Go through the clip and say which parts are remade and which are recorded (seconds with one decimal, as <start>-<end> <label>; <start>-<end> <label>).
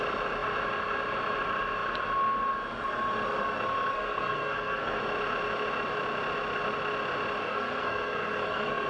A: 0.0-3.9 recorded; 3.9-5.0 remade; 5.0-7.4 recorded; 7.4-8.9 remade